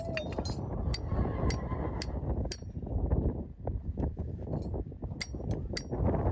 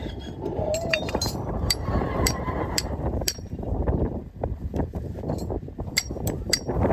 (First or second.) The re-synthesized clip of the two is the second